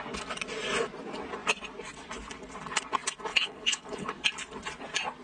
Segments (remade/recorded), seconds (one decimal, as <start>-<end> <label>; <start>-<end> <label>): 0.0-3.3 recorded; 3.3-4.1 remade; 4.1-5.2 recorded